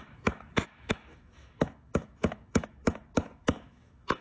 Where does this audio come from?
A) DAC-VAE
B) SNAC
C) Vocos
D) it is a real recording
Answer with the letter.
A